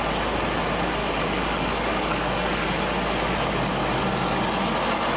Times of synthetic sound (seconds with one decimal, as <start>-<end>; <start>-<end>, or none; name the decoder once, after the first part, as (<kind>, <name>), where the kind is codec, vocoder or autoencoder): 1.0-2.3 (codec, DAC)